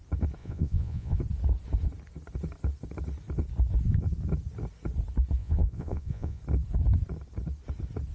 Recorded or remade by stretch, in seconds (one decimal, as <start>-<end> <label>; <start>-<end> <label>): 0.0-0.4 recorded; 0.4-1.2 remade; 1.2-5.4 recorded; 5.4-6.4 remade; 6.4-8.1 recorded